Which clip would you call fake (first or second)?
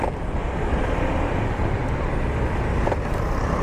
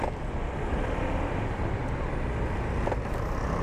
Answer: first